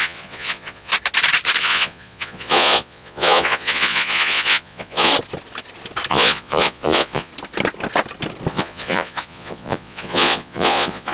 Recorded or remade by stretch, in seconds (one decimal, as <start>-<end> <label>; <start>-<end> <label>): 0.0-0.9 remade; 0.9-1.6 recorded; 1.6-5.1 remade; 5.1-6.1 recorded; 6.1-7.3 remade; 7.3-8.5 recorded; 8.5-11.1 remade